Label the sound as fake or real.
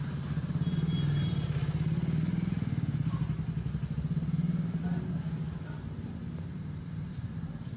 real